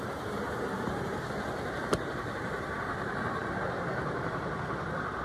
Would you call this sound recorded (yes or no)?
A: no